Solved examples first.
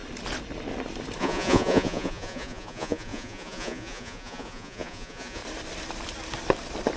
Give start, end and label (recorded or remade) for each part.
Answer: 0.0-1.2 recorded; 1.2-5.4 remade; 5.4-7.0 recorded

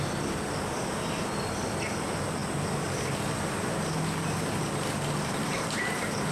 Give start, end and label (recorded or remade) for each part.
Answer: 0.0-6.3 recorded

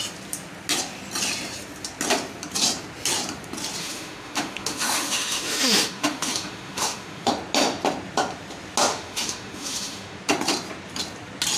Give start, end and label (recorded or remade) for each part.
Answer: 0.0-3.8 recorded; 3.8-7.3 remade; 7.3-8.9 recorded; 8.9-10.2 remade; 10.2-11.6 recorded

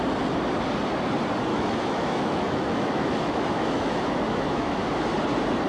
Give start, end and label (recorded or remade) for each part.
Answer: 0.0-1.5 recorded; 1.5-4.9 remade; 4.9-5.7 recorded

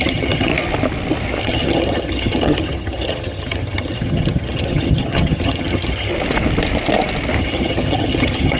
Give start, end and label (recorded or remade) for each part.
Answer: 0.0-0.5 remade; 0.5-1.4 recorded; 1.4-6.1 remade; 6.1-7.4 recorded; 7.4-8.6 remade

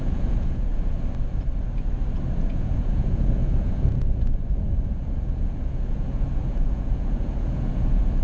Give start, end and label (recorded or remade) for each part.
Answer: 0.0-0.7 remade; 0.7-2.4 recorded; 2.4-8.2 remade

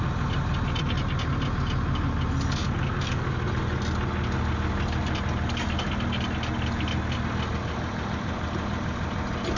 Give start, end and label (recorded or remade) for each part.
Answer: 0.0-9.6 recorded